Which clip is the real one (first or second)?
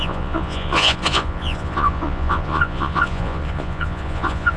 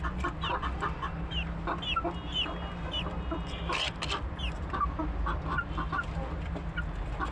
second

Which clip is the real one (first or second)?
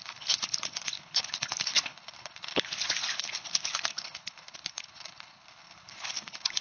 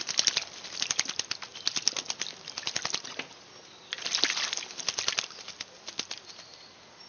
second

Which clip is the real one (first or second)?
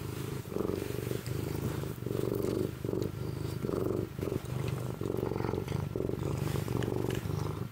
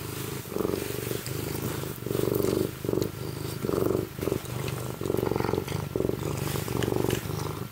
second